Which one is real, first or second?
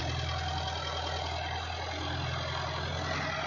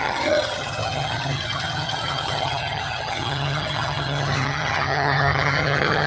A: first